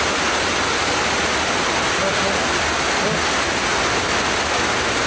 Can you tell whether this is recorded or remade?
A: recorded